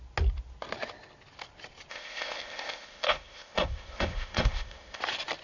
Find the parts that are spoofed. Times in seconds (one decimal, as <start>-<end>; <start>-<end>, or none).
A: 1.9-5.0